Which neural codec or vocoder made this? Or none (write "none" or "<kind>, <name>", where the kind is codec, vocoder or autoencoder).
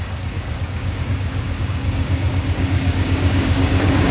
codec, DAC